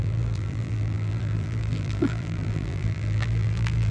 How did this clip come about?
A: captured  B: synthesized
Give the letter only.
B